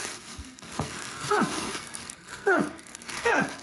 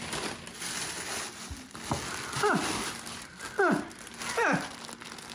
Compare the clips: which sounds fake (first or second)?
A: first